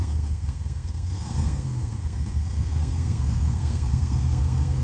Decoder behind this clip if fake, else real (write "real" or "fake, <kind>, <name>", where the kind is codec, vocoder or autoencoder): fake, codec, SNAC